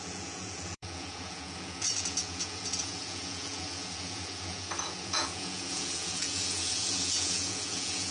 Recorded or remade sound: remade